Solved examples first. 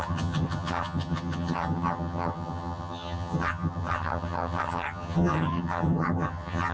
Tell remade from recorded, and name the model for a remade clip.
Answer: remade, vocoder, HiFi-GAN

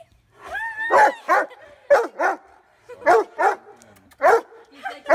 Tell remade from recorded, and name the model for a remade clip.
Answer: recorded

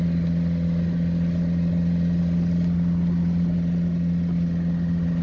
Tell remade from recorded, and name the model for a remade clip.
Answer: recorded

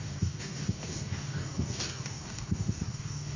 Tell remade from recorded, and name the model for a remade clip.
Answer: remade, codec, DAC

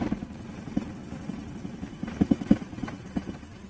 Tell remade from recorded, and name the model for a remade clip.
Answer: recorded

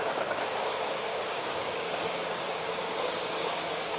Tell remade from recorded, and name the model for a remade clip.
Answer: remade, codec, DAC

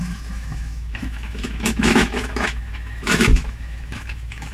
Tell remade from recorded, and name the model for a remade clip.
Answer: remade, autoencoder, DAC-VAE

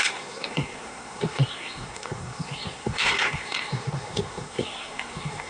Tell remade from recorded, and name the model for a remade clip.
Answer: remade, codec, SNAC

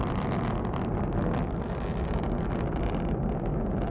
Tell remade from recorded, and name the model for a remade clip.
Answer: recorded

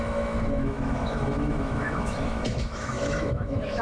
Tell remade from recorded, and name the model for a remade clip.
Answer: remade, autoencoder, DAC-VAE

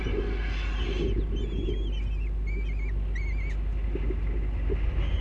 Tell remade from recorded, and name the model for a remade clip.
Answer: recorded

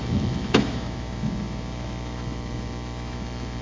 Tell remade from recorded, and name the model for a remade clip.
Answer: remade, autoencoder, DAC-VAE